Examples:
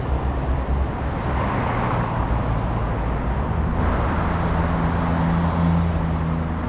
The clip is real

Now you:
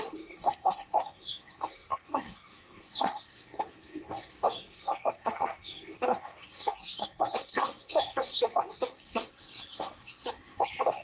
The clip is fake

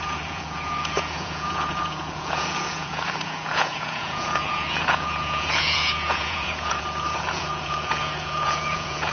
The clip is fake